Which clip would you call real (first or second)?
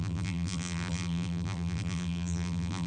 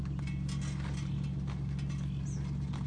second